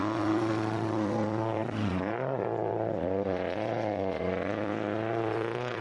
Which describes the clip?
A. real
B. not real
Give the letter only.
B